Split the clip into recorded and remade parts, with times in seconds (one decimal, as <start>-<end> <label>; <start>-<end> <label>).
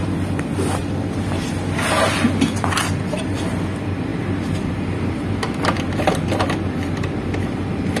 0.0-8.0 recorded